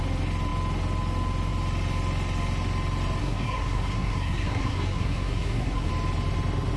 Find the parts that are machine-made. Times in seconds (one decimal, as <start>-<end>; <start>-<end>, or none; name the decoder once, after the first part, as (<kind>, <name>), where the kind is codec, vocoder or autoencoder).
3.2-5.9 (codec, SNAC)